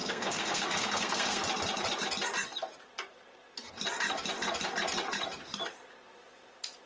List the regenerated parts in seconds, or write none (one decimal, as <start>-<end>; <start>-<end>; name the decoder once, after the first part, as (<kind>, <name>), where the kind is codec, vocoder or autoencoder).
0.0-1.4 (codec, SNAC)

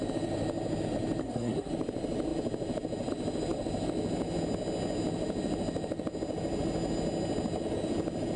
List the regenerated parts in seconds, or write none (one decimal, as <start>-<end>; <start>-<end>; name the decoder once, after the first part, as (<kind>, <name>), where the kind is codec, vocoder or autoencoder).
1.2-1.7 (codec, SNAC)

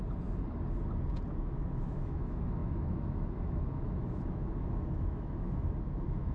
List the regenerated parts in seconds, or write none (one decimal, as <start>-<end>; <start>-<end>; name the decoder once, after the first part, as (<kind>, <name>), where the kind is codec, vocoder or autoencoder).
1.3-6.3 (autoencoder, DAC-VAE)

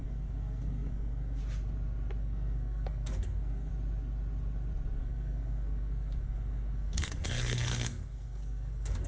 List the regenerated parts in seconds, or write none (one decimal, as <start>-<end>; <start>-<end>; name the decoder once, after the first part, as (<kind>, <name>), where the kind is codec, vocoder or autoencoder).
0.0-1.4 (codec, SNAC); 2.2-3.7; 5.0-9.1

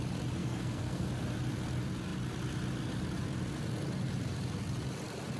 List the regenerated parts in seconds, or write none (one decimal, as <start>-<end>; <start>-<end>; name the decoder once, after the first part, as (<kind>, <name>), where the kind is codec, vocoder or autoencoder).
0.4-1.1 (codec, SNAC)